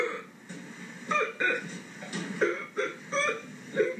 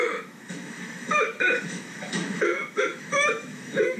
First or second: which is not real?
second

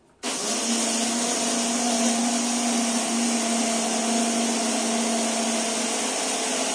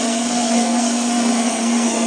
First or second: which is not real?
second